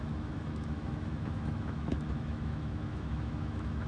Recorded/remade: remade